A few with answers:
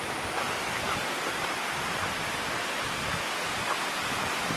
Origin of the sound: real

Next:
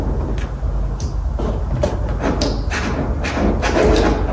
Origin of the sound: real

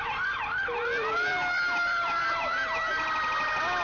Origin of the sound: fake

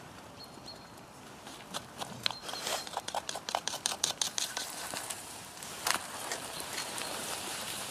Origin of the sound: fake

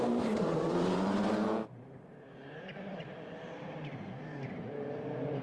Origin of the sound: fake